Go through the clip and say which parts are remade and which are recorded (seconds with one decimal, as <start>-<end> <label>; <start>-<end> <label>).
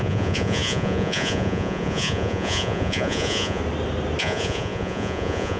0.0-3.6 remade; 3.6-4.2 recorded; 4.2-5.6 remade